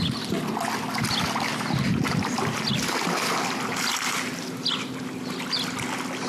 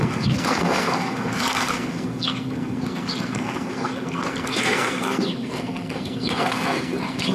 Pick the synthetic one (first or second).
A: second